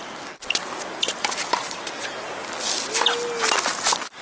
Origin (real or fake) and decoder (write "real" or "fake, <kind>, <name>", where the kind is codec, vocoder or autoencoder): real